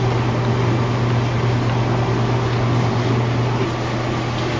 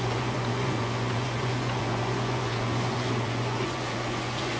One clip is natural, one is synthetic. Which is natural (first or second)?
first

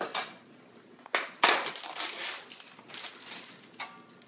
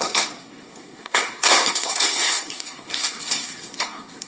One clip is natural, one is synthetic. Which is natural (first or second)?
first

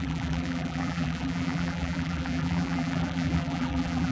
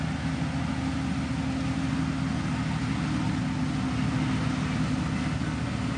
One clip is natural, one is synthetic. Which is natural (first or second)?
second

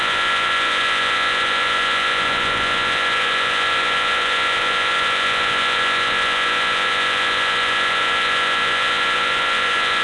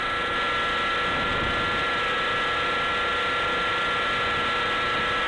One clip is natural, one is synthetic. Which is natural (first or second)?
second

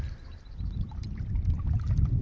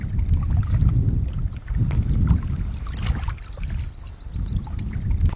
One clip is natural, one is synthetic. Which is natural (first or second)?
second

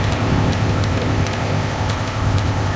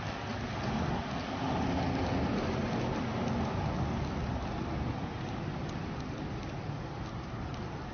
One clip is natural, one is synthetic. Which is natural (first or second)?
second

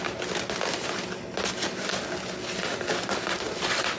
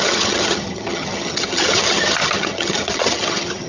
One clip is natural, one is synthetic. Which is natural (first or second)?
first